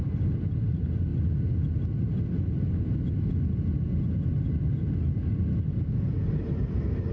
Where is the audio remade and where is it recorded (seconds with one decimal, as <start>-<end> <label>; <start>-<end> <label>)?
0.0-7.1 recorded